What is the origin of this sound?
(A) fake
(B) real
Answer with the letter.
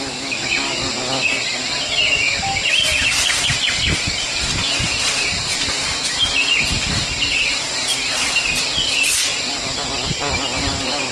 B